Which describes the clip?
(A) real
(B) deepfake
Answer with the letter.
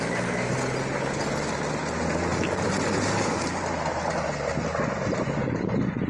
A